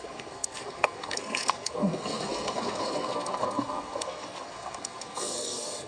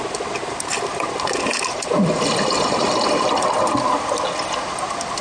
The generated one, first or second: first